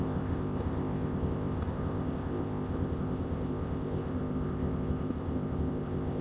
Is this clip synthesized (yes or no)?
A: yes